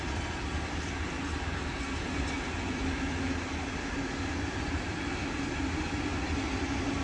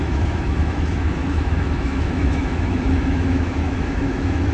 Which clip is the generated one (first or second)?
second